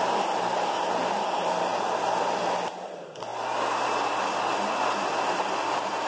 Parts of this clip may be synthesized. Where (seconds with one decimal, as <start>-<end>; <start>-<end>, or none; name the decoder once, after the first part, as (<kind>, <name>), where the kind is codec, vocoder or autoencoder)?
none